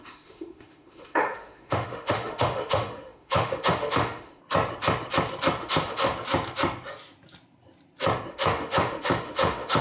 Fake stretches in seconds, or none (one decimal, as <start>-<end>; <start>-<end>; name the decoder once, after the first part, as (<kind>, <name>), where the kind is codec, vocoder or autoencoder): 0.0-4.4 (autoencoder, DAC-VAE); 5.6-6.1; 8.3-9.8